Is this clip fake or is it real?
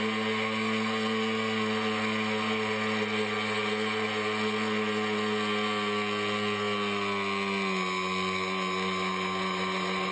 real